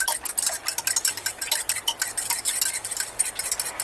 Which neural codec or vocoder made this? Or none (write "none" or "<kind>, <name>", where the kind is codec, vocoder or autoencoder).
none